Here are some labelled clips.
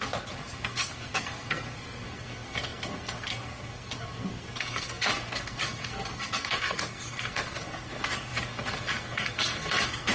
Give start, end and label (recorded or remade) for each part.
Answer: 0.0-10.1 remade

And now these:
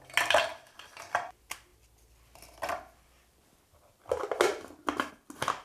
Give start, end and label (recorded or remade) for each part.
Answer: 0.0-5.6 recorded

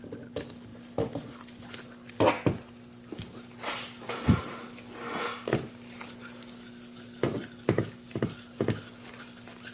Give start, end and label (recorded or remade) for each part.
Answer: 0.0-9.7 recorded

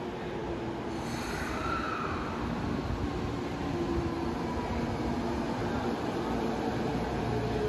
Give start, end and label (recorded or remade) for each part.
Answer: 0.0-5.6 recorded; 5.6-7.2 remade; 7.2-7.7 recorded

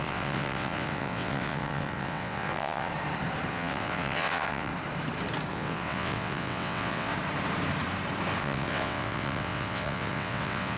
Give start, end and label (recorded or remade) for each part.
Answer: 0.0-2.9 remade; 2.9-3.5 recorded; 3.5-4.7 remade; 4.7-5.5 recorded; 5.5-7.1 remade; 7.1-8.4 recorded; 8.4-10.8 remade

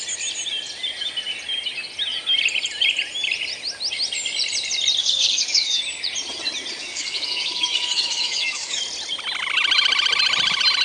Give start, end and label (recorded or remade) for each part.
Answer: 0.0-5.0 recorded; 5.0-5.8 remade; 5.8-6.8 recorded; 6.8-8.8 remade; 8.8-10.8 recorded